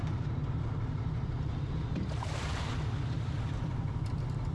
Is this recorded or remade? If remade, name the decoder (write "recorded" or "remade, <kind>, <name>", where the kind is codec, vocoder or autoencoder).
remade, vocoder, BigVGAN v2